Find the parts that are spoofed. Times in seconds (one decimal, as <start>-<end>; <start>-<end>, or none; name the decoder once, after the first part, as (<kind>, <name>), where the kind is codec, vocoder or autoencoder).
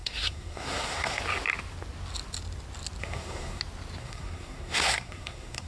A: 0.0-1.2 (codec, SNAC); 3.0-3.6; 4.0-5.7